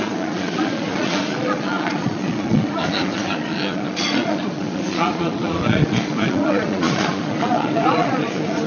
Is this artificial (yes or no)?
yes